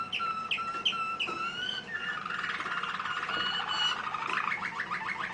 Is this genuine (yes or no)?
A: yes